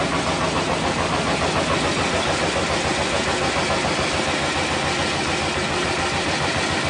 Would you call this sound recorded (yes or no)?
yes